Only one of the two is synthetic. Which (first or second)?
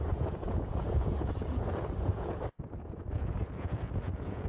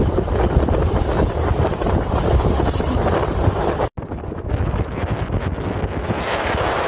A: first